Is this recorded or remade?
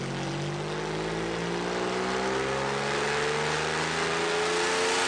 recorded